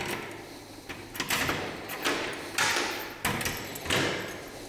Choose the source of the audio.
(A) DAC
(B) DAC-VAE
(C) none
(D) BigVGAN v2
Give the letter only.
C